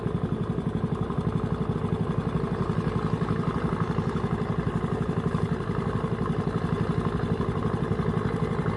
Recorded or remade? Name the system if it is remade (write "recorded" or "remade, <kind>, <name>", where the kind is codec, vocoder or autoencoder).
recorded